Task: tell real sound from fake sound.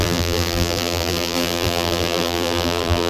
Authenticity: fake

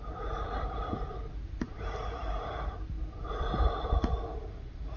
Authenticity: fake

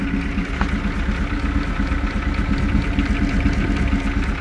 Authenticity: real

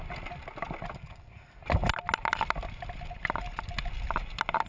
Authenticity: real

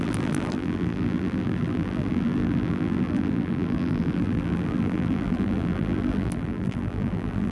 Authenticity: fake